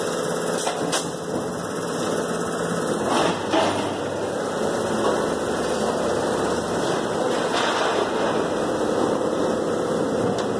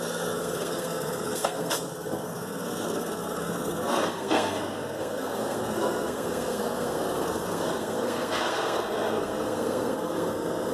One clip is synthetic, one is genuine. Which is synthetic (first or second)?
second